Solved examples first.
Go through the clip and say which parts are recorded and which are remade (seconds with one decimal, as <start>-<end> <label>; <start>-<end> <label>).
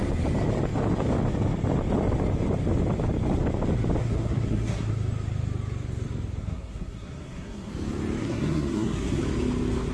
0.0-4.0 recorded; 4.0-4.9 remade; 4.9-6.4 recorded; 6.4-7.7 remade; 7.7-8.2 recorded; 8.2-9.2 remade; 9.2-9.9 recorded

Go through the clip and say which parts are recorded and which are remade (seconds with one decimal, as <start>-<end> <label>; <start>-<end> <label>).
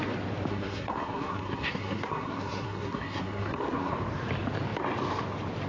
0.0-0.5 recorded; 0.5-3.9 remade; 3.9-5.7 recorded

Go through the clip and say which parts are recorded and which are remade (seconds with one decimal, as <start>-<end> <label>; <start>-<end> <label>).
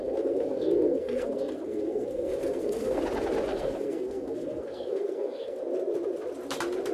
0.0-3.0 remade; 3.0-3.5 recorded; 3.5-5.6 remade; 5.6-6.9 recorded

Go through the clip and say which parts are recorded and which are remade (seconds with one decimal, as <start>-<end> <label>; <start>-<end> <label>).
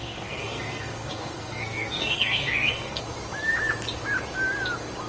0.0-3.0 remade; 3.0-5.1 recorded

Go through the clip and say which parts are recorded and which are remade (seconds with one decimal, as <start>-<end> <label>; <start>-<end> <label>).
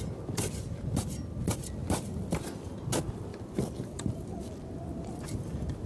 0.0-5.9 recorded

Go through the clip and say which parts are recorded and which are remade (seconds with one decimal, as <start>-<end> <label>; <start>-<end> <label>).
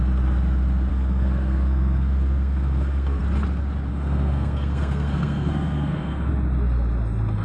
0.0-0.9 recorded; 0.9-3.2 remade; 3.2-3.9 recorded; 3.9-6.3 remade; 6.3-7.4 recorded